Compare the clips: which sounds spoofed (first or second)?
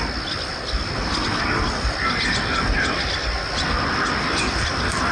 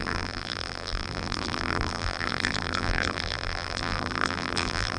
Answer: second